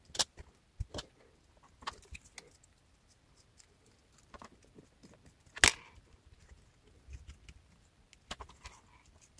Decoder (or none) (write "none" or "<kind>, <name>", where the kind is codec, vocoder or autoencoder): none